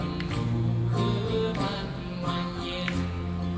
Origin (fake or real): real